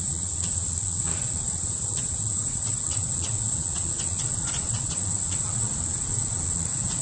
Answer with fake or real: fake